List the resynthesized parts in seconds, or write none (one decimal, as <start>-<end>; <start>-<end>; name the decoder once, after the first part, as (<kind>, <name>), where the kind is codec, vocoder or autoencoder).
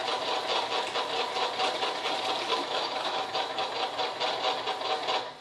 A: 2.6-3.7 (autoencoder, DAC-VAE)